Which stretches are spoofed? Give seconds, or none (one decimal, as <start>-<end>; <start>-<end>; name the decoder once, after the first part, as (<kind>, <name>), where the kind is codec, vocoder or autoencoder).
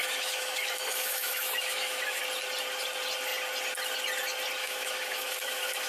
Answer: 0.0-2.2 (autoencoder, DAC-VAE); 4.6-5.9